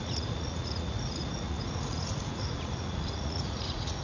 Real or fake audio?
fake